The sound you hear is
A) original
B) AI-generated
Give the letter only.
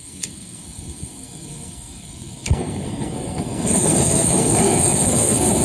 B